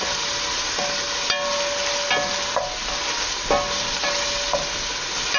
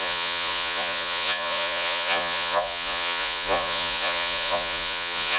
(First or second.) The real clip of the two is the first